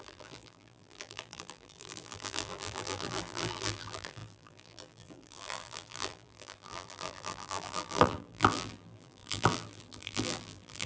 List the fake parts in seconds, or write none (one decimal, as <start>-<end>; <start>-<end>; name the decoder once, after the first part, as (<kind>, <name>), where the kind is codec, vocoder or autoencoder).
0.0-10.9 (vocoder, BigVGAN v2)